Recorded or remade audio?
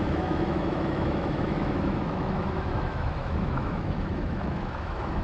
remade